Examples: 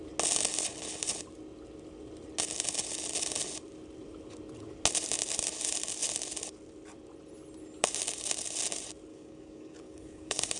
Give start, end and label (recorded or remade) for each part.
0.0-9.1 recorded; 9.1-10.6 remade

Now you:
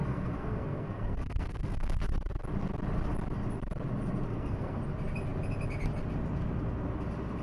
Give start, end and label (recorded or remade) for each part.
0.0-2.0 remade; 2.0-4.3 recorded; 4.3-4.8 remade; 4.8-7.4 recorded

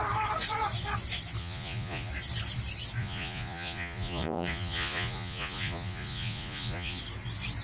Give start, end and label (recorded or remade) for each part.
0.0-1.4 recorded; 1.4-2.1 remade; 2.1-3.0 recorded; 3.0-7.0 remade; 7.0-7.6 recorded

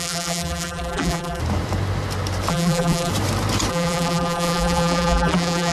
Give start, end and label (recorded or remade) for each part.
0.0-1.4 remade; 1.4-2.5 recorded; 2.5-3.1 remade; 3.1-3.7 recorded; 3.7-5.7 remade

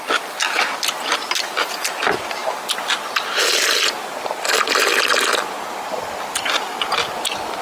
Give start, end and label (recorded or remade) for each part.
0.0-7.6 recorded

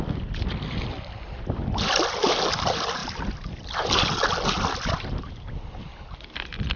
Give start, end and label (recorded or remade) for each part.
0.0-6.8 recorded

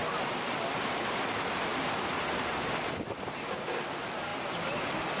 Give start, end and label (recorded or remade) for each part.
0.0-5.2 recorded